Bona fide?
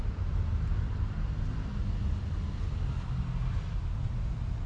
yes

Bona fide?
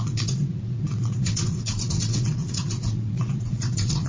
no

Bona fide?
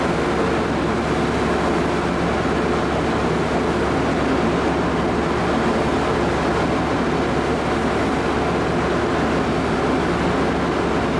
yes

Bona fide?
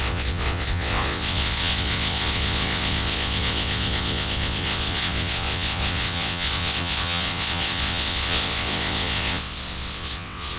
no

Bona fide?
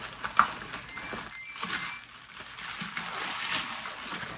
yes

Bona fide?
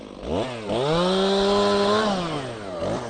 yes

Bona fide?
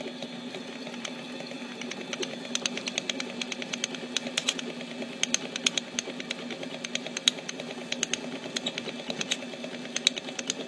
yes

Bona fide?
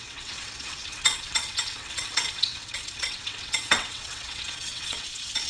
no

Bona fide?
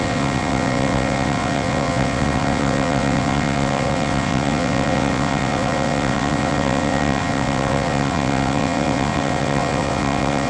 no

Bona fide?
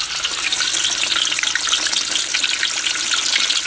yes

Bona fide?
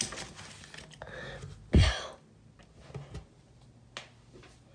yes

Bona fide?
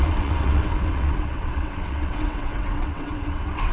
no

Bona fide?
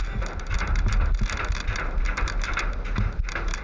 yes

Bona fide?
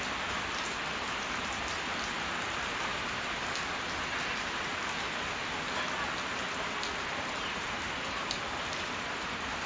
yes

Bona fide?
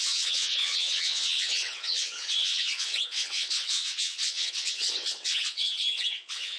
no